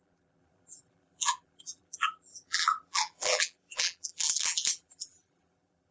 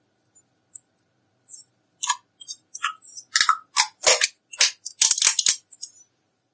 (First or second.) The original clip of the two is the second